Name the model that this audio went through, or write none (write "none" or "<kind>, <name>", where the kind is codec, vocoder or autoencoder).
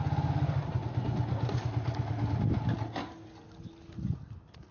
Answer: none